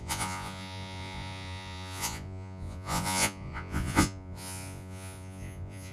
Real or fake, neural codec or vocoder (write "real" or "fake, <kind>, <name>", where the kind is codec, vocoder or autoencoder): fake, vocoder, Vocos